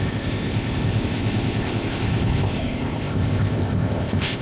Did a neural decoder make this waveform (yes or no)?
yes